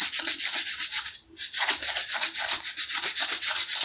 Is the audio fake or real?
real